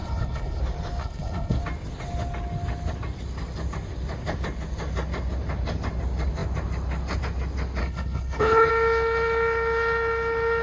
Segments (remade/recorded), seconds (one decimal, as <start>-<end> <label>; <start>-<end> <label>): 0.0-0.6 remade; 0.6-1.0 recorded; 1.0-1.6 remade; 1.6-7.8 recorded; 7.8-8.7 remade; 8.7-10.6 recorded